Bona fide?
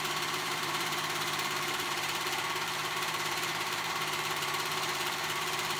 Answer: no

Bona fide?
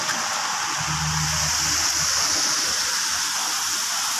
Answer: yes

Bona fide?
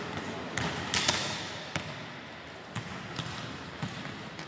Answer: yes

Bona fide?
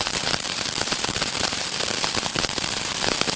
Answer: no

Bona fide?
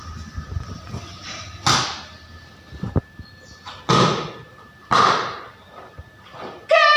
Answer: yes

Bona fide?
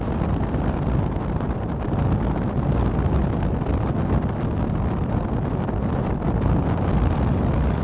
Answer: yes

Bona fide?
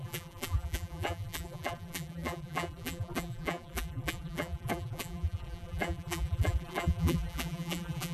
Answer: no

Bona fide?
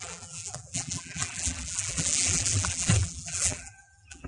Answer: no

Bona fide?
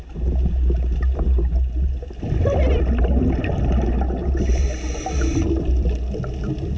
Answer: yes